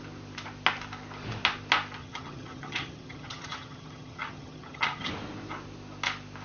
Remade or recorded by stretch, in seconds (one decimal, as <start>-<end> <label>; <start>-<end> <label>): 0.0-2.0 recorded; 2.0-5.1 remade; 5.1-6.4 recorded